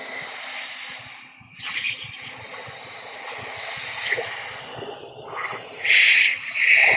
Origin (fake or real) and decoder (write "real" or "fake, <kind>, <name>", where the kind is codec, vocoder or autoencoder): real